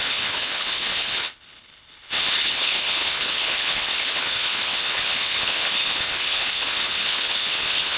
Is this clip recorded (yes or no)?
no